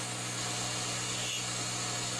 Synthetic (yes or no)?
no